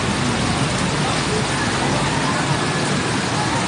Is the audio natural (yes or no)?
yes